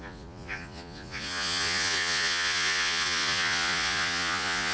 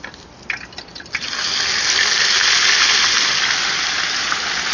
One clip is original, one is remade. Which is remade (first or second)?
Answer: first